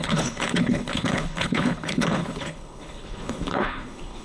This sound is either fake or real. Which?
fake